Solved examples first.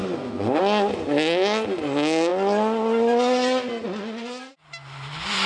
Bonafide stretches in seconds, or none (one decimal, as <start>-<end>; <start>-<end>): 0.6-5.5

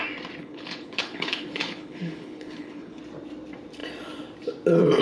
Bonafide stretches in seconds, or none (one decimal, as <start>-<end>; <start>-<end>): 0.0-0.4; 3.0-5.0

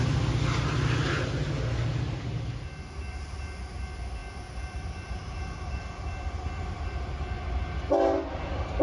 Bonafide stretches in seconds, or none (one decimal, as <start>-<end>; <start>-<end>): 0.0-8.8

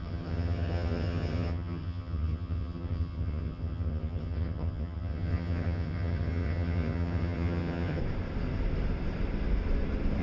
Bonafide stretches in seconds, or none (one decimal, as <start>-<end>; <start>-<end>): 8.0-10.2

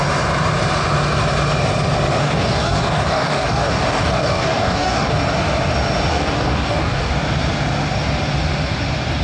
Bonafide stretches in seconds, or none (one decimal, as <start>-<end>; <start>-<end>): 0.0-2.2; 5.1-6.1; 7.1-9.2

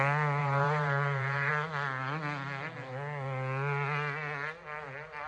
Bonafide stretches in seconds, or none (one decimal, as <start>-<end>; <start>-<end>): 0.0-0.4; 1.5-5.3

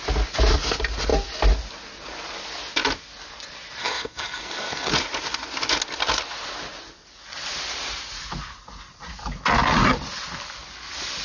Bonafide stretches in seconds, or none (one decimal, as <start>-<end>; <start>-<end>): 0.0-3.8; 4.9-11.2